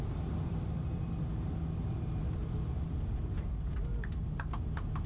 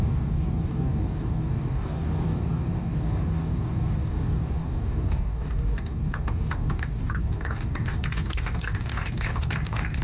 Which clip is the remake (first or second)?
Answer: second